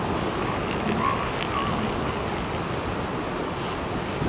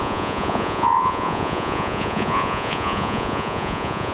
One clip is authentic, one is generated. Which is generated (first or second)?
second